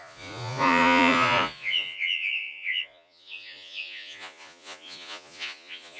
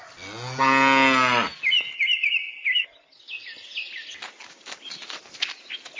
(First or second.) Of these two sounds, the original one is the second